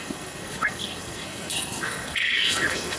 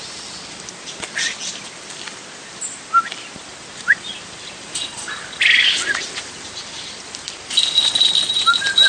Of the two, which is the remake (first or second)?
first